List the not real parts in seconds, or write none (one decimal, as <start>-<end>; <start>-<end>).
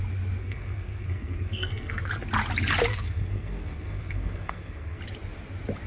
0.4-2.1; 2.9-5.0